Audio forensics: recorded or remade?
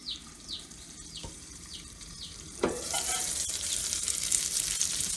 remade